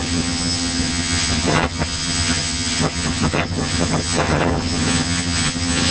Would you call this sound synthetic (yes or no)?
yes